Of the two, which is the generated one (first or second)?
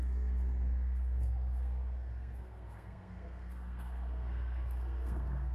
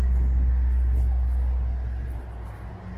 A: first